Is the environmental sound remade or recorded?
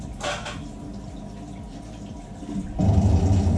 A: recorded